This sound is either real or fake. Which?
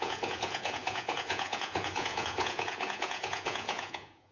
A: fake